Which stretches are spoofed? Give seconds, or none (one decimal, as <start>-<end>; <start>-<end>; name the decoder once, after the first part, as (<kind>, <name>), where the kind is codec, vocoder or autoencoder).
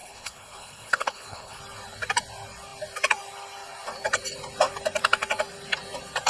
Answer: 0.0-1.6 (codec, HILCodec)